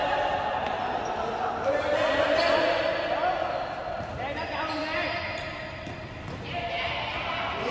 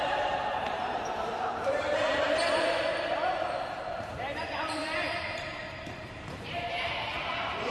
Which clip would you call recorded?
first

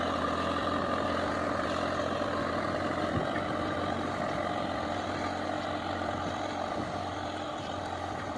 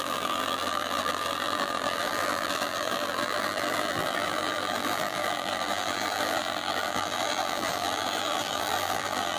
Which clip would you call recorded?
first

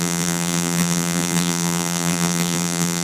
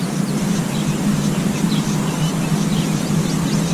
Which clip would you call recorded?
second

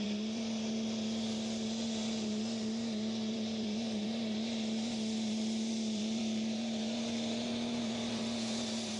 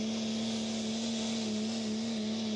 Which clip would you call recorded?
second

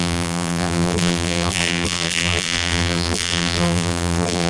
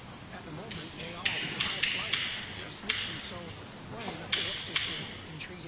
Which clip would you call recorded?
second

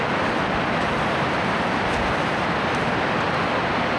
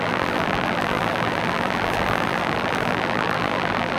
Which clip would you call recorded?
first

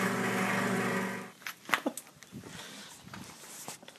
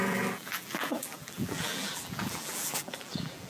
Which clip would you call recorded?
first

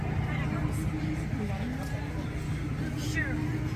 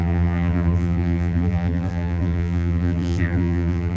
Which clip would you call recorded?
first